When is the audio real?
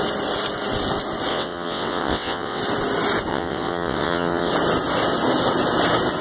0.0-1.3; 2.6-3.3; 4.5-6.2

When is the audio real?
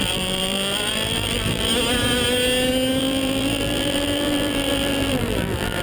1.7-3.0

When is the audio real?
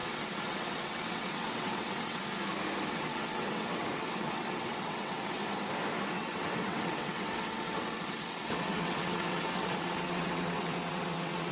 2.2-2.9; 5.4-6.1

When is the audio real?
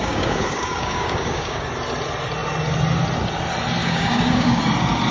1.7-3.8; 4.6-5.1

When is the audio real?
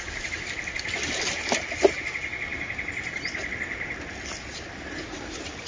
0.0-5.7